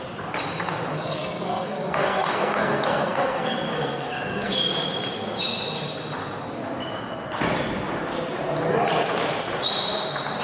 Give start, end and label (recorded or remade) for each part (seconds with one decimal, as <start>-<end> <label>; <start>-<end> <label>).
0.0-0.9 recorded; 0.9-4.6 remade; 4.6-10.4 recorded